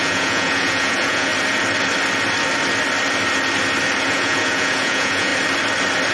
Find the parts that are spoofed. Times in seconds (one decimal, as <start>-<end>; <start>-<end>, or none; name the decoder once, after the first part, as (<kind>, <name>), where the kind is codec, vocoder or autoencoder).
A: 0.0-1.3 (vocoder, Vocos); 4.0-5.3